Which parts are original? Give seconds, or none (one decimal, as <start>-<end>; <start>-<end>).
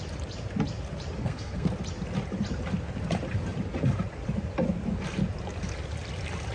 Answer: 0.0-1.2; 1.7-6.5